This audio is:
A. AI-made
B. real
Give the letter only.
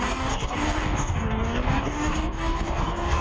A